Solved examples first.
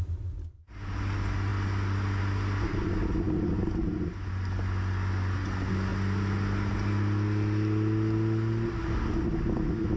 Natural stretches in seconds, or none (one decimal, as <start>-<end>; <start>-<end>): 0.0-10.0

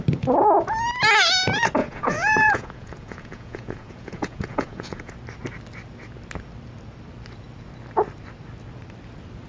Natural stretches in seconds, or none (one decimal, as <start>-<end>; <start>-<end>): 0.0-1.8; 5.1-9.5

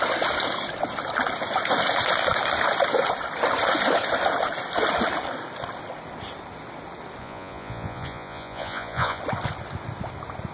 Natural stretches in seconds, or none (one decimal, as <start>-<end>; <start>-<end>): 0.0-7.2; 9.2-10.5

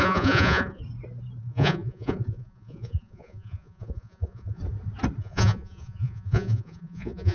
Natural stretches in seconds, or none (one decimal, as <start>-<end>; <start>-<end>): 0.8-1.4; 4.6-5.2